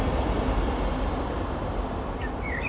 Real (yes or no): yes